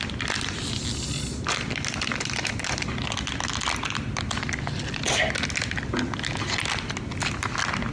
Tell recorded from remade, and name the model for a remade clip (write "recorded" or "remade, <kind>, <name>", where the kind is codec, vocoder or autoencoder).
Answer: recorded